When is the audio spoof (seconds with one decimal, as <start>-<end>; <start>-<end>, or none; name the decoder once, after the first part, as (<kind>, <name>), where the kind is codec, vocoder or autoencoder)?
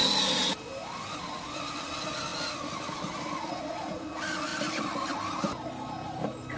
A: none